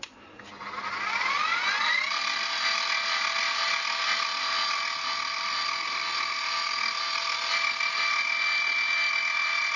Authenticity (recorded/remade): recorded